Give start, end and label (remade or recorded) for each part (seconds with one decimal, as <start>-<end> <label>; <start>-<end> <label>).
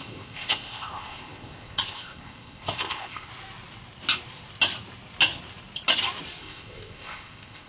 0.0-3.3 remade; 3.3-6.4 recorded; 6.4-7.7 remade